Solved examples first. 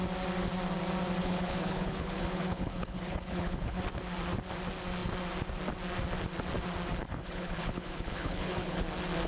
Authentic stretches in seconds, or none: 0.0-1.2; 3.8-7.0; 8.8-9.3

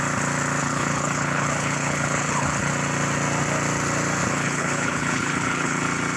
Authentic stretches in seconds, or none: 0.0-0.6; 2.7-4.2; 5.8-6.2